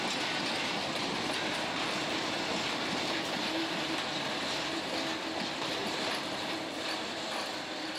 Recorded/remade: remade